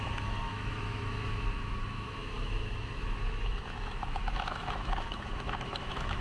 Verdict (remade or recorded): remade